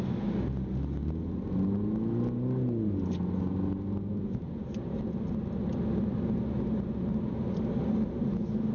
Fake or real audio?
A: real